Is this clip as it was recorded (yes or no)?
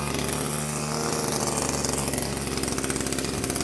yes